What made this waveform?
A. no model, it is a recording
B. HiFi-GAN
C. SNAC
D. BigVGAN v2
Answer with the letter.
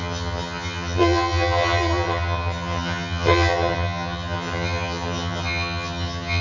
B